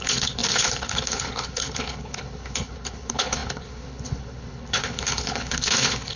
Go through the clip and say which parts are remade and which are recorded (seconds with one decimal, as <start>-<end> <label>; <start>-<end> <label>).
0.0-6.2 remade

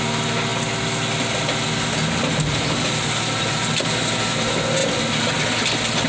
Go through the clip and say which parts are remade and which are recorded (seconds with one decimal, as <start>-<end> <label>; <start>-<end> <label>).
0.0-6.1 recorded

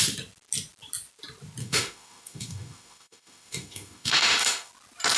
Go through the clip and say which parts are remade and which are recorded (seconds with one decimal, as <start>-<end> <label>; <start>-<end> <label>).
0.0-1.6 recorded; 1.6-4.7 remade; 4.7-5.2 recorded